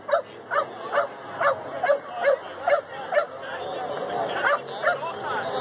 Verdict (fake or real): real